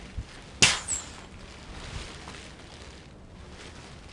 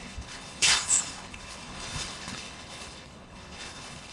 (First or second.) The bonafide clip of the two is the first